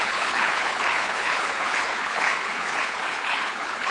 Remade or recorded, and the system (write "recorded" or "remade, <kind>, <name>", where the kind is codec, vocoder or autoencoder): remade, codec, HILCodec